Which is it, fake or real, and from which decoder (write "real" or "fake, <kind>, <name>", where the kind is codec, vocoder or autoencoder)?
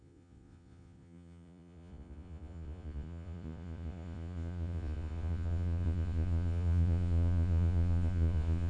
fake, vocoder, Vocos